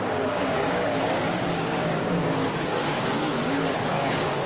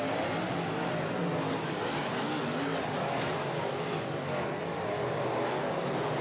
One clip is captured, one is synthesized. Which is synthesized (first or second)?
first